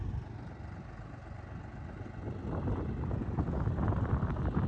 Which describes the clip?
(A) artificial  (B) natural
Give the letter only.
B